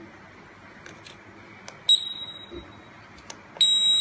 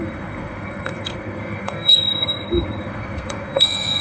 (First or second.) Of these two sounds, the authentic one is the first